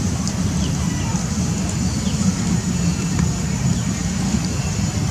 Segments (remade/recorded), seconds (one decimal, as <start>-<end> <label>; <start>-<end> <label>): 0.0-5.1 recorded